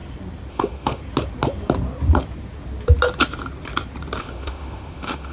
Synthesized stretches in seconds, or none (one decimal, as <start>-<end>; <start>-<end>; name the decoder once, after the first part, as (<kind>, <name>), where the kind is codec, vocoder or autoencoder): 0.5-1.0 (autoencoder, DAC-VAE); 4.2-5.3